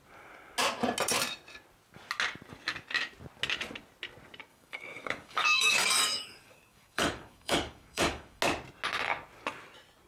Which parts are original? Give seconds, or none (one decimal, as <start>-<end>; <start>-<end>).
0.0-4.5; 8.4-10.1